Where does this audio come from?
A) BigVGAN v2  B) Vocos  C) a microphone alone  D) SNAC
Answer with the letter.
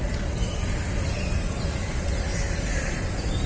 A